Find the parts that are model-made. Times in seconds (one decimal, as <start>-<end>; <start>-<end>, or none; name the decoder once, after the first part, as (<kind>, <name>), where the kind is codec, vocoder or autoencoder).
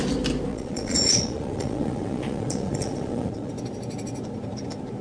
0.5-3.5 (vocoder, Vocos)